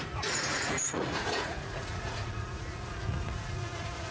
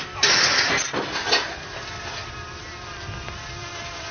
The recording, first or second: second